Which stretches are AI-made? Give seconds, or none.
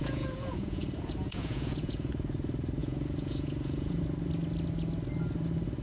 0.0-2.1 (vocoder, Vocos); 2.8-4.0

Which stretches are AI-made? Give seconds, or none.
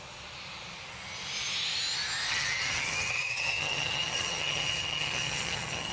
2.3-5.9 (vocoder, HiFi-GAN)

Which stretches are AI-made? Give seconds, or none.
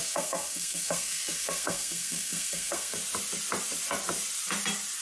0.0-3.0 (codec, SNAC)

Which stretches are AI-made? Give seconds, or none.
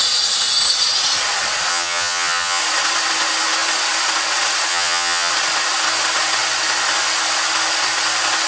1.7-2.6 (vocoder, HiFi-GAN); 4.7-5.3